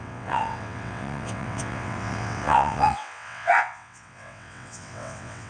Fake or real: fake